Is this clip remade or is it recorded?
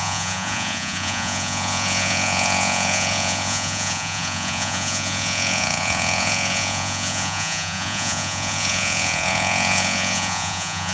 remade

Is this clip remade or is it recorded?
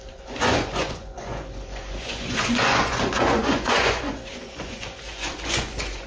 remade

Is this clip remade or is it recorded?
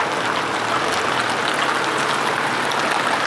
recorded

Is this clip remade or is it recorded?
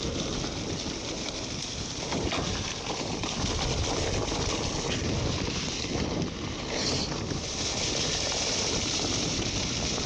recorded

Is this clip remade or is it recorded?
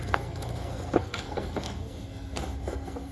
remade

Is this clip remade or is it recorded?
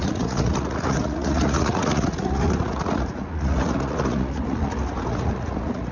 remade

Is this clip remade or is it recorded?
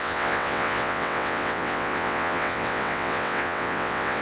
remade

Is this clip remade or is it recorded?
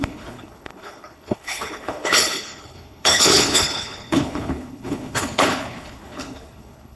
remade